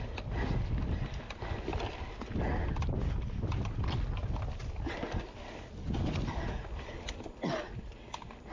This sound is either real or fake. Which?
real